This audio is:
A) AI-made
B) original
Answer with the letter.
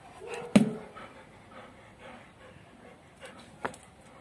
B